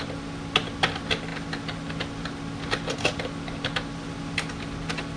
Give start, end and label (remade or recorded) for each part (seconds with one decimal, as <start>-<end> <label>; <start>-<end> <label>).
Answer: 0.0-5.2 recorded